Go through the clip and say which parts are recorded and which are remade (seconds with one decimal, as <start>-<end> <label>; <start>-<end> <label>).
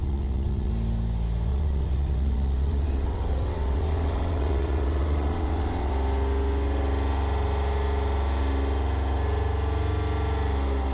0.0-0.7 remade; 0.7-1.5 recorded; 1.5-5.9 remade; 5.9-10.9 recorded